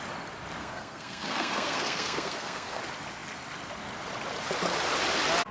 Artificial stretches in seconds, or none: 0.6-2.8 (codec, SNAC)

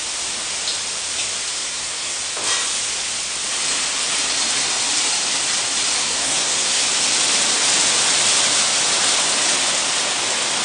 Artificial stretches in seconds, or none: 1.5-2.2 (codec, SNAC); 6.0-6.8

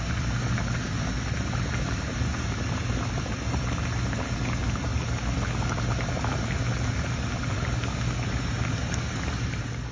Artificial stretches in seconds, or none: none